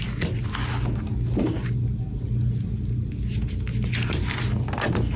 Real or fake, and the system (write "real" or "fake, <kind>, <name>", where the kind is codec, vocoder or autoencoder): real